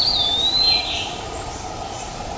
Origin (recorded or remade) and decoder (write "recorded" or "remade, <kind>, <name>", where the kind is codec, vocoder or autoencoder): remade, vocoder, BigVGAN v2